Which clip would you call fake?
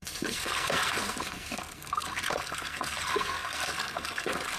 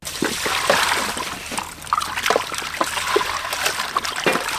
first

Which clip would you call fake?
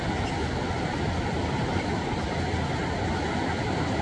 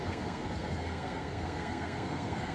second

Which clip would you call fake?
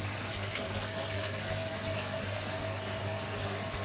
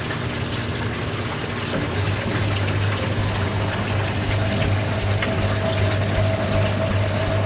first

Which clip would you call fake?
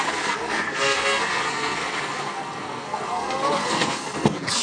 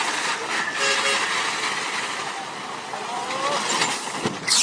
first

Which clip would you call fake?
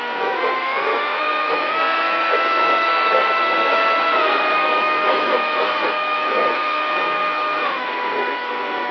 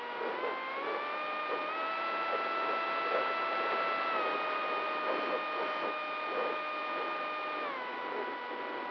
first